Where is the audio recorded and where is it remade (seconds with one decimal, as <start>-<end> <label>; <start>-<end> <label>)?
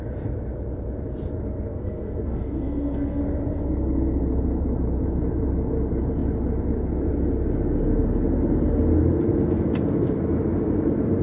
0.0-1.7 recorded; 1.7-3.2 remade; 3.2-11.2 recorded